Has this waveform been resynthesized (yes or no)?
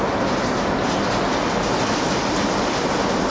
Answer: no